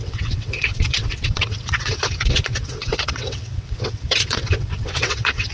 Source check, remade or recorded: remade